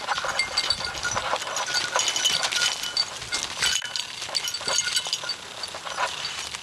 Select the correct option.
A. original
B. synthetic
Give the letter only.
A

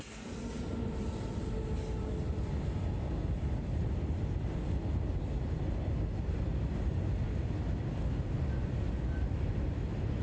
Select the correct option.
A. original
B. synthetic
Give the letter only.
A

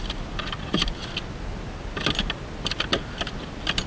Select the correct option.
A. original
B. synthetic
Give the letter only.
A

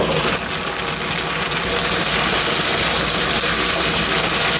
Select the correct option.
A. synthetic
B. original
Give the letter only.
B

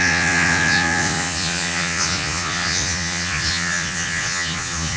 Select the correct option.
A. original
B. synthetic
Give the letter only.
B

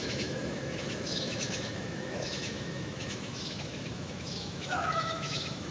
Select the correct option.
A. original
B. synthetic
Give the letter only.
B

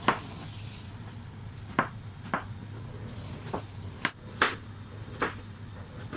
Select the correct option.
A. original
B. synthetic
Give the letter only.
A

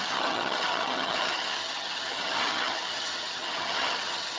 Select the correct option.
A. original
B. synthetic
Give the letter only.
B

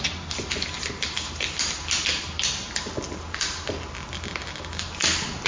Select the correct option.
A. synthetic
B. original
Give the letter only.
B